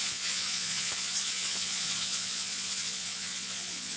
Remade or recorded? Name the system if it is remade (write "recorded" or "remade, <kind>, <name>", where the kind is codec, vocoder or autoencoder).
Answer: remade, vocoder, Vocos